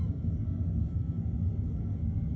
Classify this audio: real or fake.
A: fake